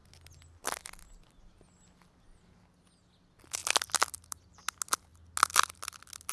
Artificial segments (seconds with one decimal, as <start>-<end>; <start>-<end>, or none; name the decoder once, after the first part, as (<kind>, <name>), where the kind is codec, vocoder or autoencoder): none